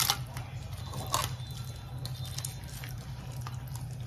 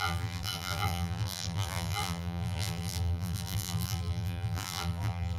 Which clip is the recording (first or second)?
first